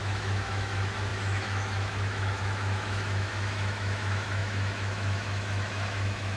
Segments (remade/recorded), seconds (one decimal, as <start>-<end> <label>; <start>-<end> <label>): 0.0-6.4 remade